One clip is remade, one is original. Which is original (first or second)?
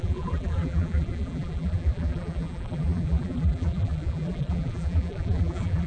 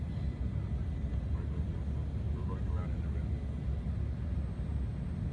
second